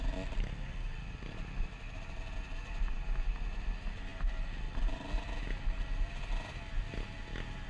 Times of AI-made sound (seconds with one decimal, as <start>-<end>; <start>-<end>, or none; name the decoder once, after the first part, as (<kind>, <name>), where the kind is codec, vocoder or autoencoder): none